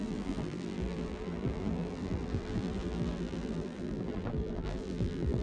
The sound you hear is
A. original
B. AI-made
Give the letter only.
B